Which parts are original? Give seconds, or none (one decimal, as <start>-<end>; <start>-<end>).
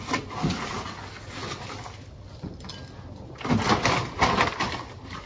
0.0-5.3